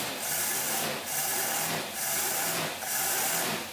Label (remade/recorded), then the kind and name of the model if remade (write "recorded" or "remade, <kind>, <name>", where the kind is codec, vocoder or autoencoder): recorded